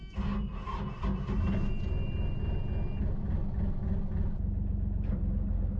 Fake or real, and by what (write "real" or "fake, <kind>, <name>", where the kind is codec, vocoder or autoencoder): real